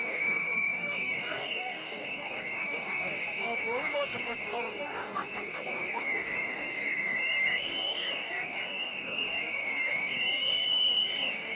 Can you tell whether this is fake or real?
fake